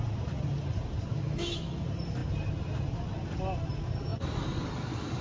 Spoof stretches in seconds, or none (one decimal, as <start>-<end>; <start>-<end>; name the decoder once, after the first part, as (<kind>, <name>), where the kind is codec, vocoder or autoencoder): 1.1-1.8 (autoencoder, DAC-VAE)